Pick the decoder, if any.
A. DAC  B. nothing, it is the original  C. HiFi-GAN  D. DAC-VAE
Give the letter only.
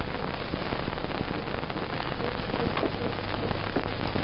B